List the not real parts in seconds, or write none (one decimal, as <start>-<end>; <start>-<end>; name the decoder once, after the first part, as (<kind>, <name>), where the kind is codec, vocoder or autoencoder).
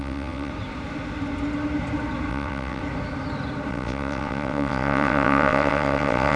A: 0.0-0.5 (vocoder, WaveNeXt); 2.3-2.8; 3.7-6.4